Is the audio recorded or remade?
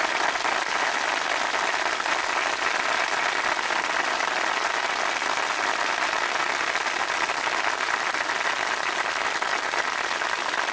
recorded